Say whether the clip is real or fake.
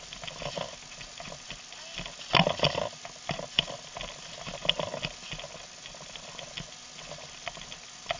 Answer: real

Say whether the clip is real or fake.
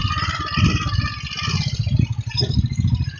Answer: real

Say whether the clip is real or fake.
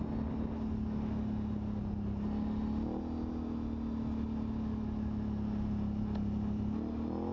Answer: real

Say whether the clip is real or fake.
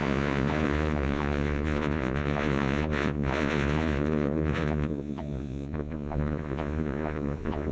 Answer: fake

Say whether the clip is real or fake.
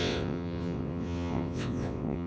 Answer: fake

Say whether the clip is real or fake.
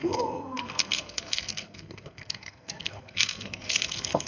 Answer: fake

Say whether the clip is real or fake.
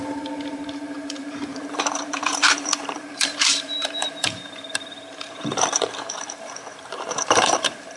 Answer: fake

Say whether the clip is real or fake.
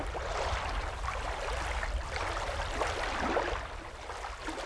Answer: real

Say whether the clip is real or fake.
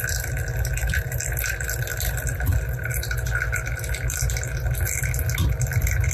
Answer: real